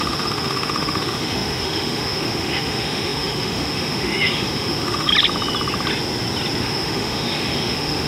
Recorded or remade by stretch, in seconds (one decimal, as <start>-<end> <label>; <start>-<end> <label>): 0.0-5.1 remade; 5.1-6.6 recorded; 6.6-8.1 remade